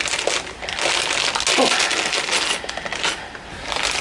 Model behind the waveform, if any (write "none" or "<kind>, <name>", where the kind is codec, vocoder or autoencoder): none